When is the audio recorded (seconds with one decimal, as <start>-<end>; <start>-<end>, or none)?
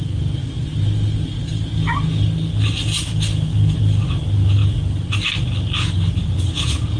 0.0-7.0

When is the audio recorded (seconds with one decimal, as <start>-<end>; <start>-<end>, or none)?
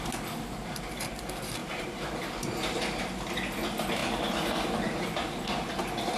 0.0-1.6; 2.8-6.2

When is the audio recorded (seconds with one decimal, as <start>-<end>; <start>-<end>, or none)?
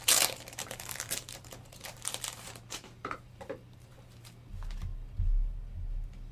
4.5-6.3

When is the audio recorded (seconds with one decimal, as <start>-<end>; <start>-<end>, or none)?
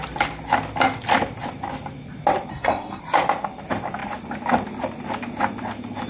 0.0-2.5; 3.0-6.1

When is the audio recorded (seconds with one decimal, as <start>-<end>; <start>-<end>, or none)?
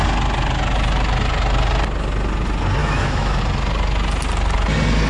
0.0-2.8; 3.4-5.1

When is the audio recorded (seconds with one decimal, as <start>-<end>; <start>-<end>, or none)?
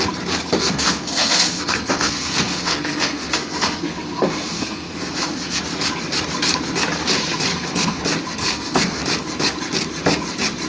0.0-0.6; 5.6-7.5; 8.0-8.4; 9.0-10.7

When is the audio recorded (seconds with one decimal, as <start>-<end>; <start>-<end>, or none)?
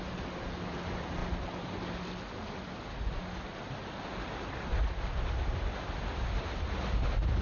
0.0-7.4